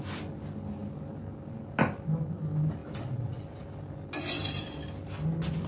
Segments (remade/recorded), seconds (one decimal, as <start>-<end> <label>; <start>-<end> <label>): 0.0-5.7 recorded